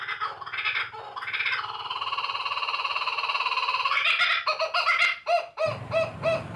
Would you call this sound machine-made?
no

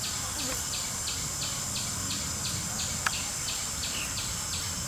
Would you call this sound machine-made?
yes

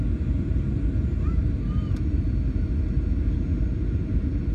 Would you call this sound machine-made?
no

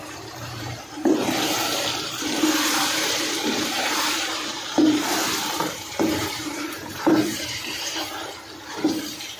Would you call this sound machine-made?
yes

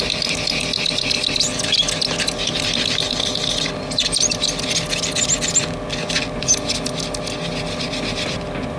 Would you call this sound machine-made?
no